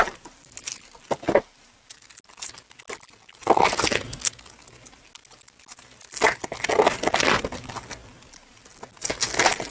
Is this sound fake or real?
real